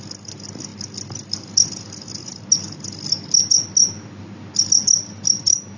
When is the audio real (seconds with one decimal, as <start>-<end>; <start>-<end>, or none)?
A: 0.0-5.8